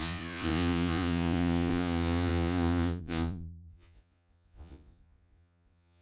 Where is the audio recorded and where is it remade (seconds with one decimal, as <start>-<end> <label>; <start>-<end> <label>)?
0.0-6.0 remade